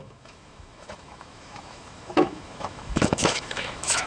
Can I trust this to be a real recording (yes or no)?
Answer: no